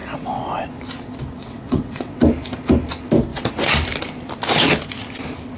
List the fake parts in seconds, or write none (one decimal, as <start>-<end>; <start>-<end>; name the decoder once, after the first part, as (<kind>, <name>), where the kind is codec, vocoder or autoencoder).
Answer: 0.0-0.6 (vocoder, WaveNeXt); 1.4-2.2